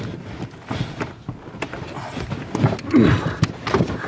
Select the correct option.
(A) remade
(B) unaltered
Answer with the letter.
B